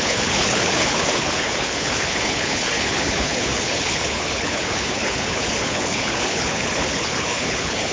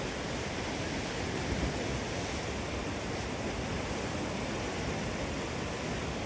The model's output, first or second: first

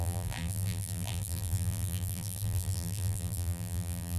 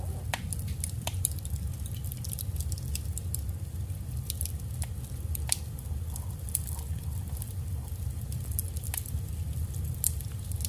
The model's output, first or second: first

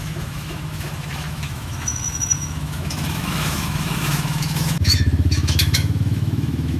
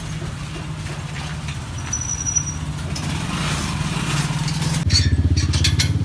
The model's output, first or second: first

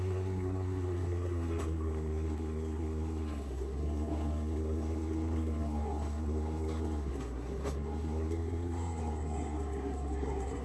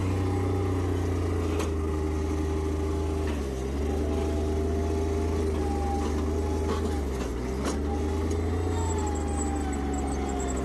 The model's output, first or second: first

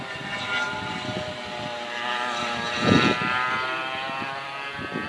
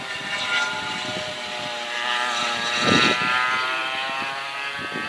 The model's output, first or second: second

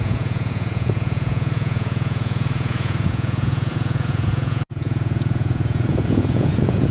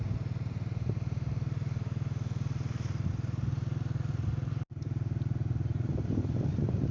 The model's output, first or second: first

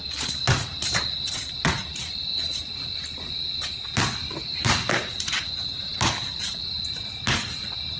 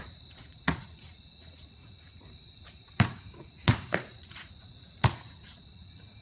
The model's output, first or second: second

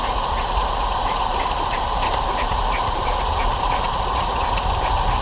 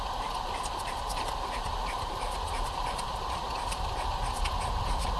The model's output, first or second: second